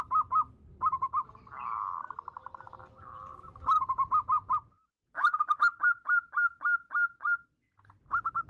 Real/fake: real